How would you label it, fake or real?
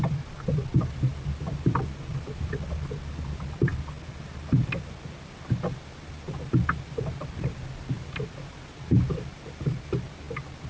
real